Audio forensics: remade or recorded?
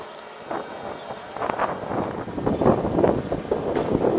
recorded